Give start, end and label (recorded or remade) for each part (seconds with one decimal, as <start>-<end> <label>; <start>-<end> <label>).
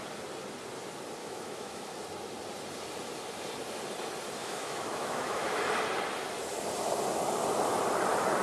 0.0-1.2 recorded; 1.2-1.9 remade; 1.9-4.4 recorded; 4.4-5.6 remade; 5.6-8.4 recorded